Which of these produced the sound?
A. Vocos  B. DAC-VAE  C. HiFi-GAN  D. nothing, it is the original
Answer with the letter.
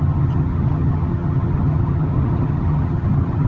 C